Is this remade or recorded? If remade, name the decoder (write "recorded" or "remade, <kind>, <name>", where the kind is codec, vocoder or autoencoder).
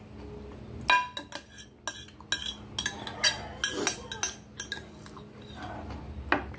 recorded